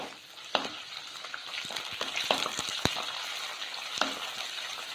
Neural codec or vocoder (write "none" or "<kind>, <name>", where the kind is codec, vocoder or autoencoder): none